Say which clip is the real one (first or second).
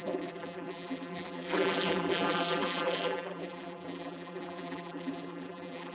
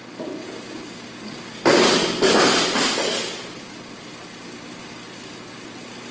second